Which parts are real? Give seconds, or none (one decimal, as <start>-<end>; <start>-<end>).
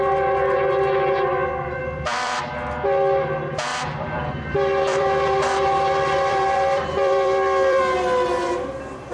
0.0-1.8; 2.4-3.7; 7.8-9.1